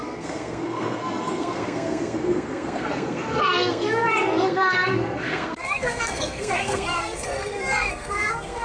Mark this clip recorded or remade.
remade